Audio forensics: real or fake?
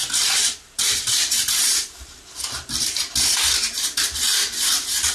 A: fake